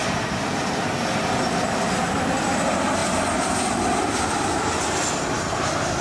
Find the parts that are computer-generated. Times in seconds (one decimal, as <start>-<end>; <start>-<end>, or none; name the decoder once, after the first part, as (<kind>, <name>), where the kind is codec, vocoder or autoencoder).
0.0-3.0 (vocoder, BigVGAN v2)